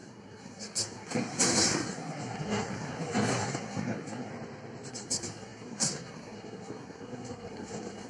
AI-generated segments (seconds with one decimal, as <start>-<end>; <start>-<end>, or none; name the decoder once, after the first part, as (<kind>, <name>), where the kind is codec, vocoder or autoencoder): 0.0-4.3 (codec, SNAC); 4.9-8.1

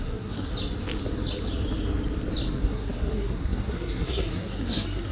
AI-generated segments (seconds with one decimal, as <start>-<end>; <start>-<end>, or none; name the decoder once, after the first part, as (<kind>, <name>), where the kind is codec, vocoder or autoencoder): 0.0-0.5 (codec, SNAC); 2.6-5.1